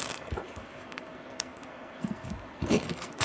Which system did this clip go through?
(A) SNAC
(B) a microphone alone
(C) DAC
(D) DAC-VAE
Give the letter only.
A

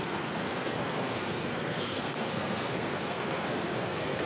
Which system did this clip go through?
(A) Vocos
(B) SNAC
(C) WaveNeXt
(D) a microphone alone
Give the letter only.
B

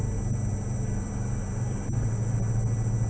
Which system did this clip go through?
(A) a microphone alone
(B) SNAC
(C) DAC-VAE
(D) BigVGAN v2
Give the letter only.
A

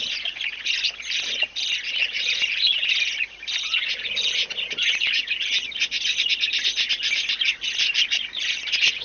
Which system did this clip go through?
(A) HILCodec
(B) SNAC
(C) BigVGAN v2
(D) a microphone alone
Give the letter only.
D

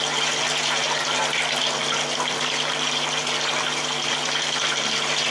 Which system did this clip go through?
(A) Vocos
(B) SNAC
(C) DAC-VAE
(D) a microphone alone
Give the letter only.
D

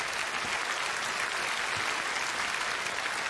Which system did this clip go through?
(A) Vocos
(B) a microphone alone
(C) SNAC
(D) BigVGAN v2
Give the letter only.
B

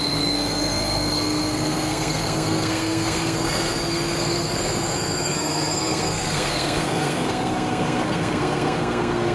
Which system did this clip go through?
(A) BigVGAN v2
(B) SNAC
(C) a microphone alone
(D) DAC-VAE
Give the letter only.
B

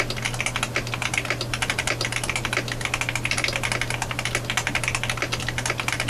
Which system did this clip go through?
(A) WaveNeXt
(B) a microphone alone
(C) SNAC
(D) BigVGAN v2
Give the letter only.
B